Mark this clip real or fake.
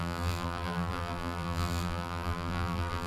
fake